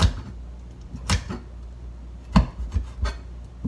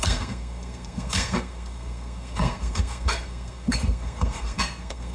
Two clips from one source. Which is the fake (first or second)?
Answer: second